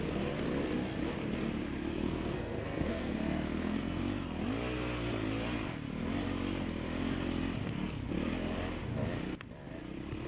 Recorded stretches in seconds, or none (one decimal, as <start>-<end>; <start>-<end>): 0.0-1.9; 4.0-7.6; 8.1-10.3

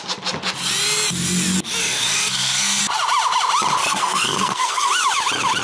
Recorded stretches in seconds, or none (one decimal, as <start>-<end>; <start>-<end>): 0.0-1.8; 2.8-3.8; 4.9-5.6

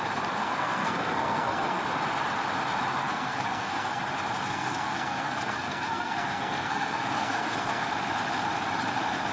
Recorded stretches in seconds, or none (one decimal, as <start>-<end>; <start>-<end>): 0.0-0.4; 1.8-3.0; 4.0-4.4; 7.9-9.3

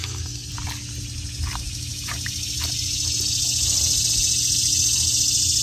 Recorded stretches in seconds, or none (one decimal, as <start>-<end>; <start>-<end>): 0.5-5.6

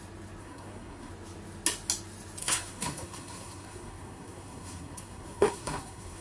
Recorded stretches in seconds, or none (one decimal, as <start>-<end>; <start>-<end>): 0.0-0.4; 1.1-2.4